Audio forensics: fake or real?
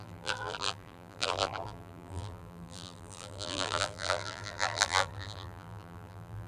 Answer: fake